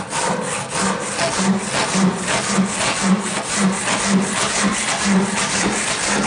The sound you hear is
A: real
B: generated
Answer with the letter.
A